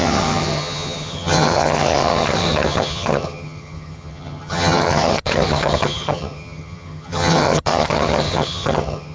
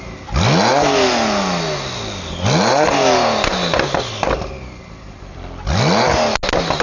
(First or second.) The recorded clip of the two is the second